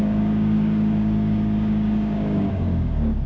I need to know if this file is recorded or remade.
remade